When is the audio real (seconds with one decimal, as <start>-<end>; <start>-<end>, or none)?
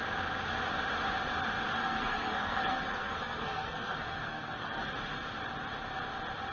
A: 0.0-1.8; 4.9-6.5